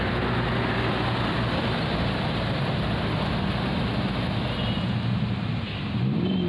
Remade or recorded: recorded